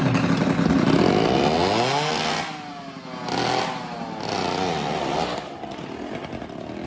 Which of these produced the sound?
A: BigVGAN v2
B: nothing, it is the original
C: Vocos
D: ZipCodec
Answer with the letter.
B